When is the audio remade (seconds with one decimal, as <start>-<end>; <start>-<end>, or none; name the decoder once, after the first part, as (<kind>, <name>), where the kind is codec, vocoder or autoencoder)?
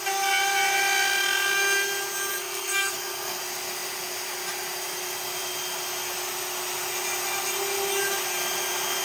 2.3-3.4 (codec, SNAC)